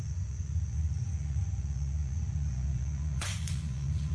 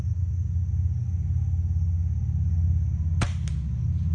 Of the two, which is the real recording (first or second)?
second